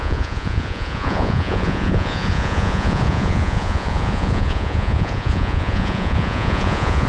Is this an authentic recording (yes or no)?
no